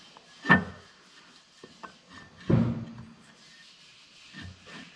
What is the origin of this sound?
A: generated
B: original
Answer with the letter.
B